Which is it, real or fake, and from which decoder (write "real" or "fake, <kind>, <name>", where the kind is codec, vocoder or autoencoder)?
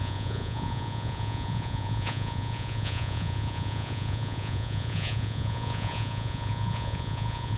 fake, vocoder, Vocos